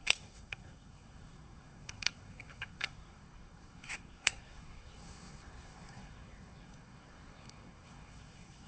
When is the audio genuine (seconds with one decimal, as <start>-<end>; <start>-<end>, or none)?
none